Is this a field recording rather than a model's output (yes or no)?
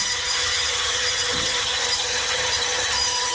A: no